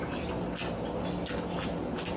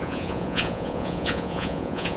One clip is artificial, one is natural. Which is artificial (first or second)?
second